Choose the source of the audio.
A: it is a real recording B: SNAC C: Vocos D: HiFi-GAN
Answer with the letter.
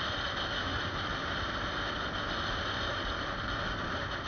A